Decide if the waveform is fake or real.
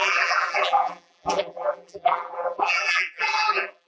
fake